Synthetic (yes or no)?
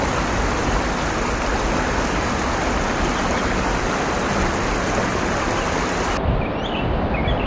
no